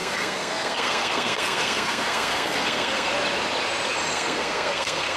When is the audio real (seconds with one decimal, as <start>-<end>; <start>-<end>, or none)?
3.1-4.1